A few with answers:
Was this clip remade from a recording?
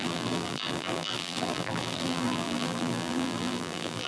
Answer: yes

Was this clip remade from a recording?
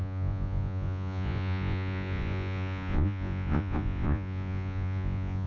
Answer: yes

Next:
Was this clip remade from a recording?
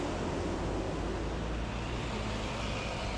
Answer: no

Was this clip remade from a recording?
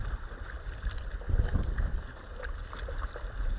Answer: no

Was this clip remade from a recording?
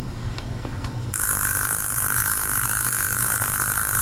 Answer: yes